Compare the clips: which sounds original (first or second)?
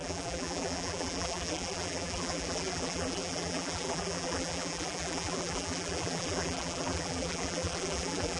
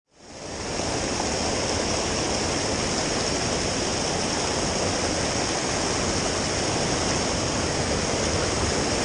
second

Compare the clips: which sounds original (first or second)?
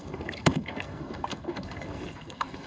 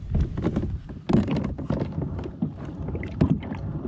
second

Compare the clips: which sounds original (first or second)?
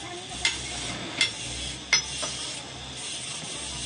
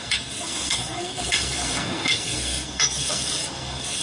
first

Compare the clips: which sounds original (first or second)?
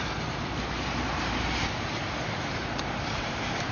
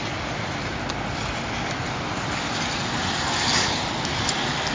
second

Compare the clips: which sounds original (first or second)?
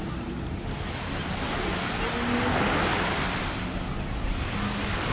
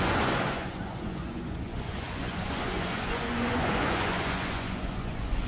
first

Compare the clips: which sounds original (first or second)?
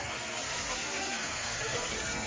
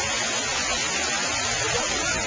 second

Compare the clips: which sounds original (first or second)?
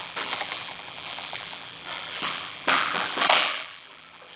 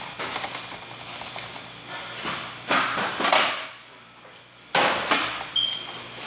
second